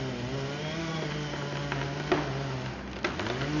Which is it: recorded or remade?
recorded